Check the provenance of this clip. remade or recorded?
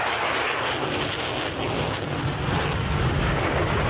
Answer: recorded